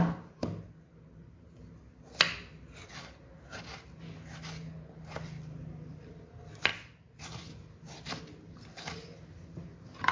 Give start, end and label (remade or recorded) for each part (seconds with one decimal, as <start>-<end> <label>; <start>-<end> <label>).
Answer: 0.0-10.1 recorded